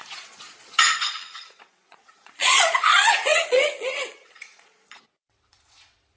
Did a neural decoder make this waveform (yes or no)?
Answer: yes